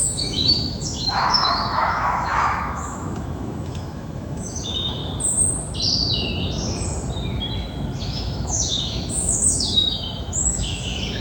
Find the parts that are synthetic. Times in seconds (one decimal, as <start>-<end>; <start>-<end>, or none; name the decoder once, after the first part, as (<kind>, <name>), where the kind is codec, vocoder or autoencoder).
0.0-5.0 (autoencoder, DAC-VAE); 8.0-11.2

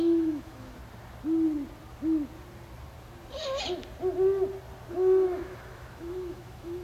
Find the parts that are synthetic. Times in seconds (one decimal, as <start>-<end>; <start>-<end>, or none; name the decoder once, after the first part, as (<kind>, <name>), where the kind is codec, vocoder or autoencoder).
0.0-0.8 (autoencoder, DAC-VAE); 4.9-6.8

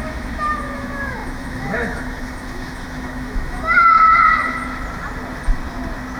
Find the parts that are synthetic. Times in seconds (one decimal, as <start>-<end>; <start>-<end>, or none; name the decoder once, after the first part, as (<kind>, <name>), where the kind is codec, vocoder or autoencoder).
0.0-4.1 (autoencoder, DAC-VAE)

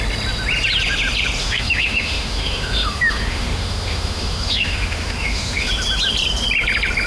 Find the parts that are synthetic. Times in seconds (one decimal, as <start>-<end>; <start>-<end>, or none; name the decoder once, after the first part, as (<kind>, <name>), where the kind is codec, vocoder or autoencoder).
1.4-5.7 (autoencoder, DAC-VAE)

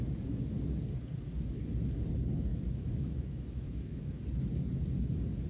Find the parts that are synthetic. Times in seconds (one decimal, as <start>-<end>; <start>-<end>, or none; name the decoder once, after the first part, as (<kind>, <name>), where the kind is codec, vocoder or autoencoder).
2.5-4.1 (autoencoder, DAC-VAE)

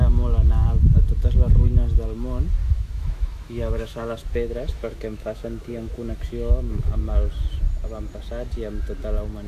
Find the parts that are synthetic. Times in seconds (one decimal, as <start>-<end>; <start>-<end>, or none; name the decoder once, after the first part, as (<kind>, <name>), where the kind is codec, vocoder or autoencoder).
2.6-7.0 (autoencoder, DAC-VAE)